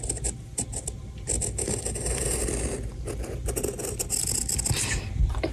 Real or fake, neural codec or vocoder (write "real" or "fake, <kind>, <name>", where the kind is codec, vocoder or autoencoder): real